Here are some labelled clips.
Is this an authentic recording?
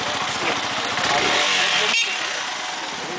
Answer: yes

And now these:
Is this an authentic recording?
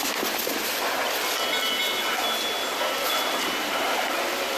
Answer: yes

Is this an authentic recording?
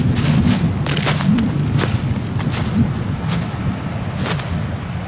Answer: yes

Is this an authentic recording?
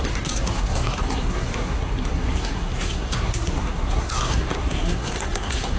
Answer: no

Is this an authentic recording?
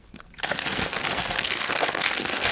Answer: no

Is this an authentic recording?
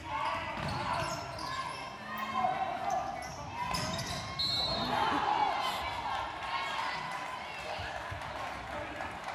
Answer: yes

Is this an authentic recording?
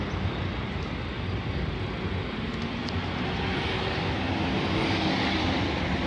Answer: yes